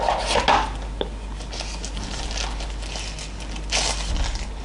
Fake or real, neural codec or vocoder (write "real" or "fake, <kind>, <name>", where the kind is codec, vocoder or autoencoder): real